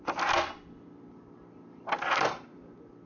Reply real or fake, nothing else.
real